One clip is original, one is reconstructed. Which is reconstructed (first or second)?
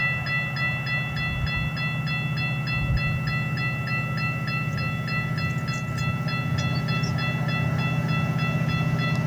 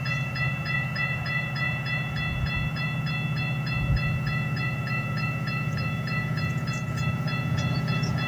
second